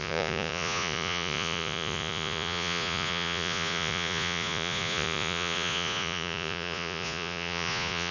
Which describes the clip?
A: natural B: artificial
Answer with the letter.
B